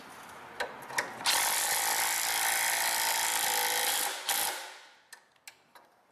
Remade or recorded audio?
recorded